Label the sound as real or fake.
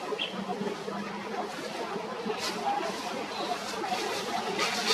real